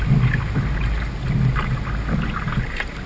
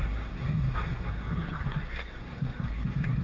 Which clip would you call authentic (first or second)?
first